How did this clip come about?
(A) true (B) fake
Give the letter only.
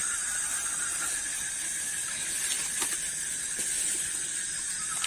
A